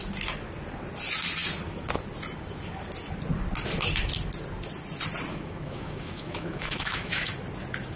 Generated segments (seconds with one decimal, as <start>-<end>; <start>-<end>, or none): 5.3-7.3